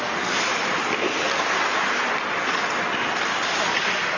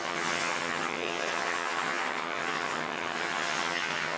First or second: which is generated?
second